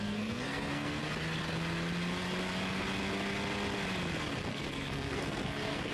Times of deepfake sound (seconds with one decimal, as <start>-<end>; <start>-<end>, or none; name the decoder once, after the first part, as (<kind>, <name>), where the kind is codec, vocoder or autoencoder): 0.0-1.0 (codec, SNAC); 4.5-5.9

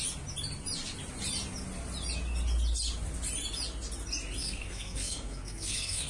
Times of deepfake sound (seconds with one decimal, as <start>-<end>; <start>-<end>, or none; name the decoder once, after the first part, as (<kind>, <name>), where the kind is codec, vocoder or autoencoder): 4.4-6.1 (codec, SNAC)

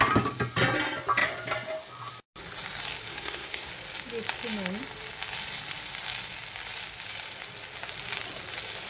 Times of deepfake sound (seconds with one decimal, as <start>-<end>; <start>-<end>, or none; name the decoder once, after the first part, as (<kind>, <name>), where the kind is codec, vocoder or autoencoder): 3.1-3.7 (codec, SNAC)

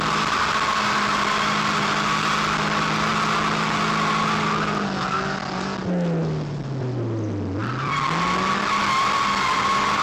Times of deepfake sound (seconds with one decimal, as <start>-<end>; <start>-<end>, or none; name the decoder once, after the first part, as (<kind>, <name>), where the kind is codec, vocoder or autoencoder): none

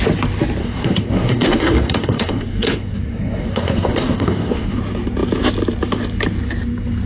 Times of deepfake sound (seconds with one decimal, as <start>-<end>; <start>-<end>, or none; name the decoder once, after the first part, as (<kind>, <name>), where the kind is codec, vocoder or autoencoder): 0.6-4.8 (codec, SNAC)

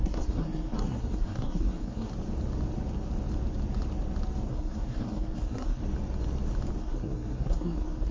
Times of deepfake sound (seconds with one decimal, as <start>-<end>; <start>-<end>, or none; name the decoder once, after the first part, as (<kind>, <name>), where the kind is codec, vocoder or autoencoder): 0.0-2.1 (codec, SNAC); 4.5-5.8; 6.8-8.1

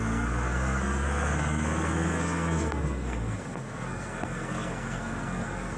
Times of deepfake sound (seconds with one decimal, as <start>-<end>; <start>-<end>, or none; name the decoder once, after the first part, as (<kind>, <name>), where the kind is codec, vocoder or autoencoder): 0.0-5.8 (codec, SNAC)

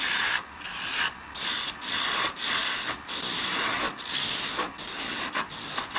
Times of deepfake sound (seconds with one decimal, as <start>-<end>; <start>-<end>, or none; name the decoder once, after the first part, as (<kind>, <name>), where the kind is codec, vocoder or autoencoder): none